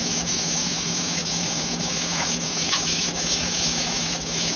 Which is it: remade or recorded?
remade